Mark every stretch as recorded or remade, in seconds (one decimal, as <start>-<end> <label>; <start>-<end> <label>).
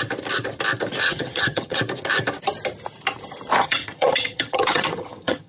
0.0-1.0 recorded; 1.0-1.8 remade; 1.8-3.6 recorded; 3.6-5.5 remade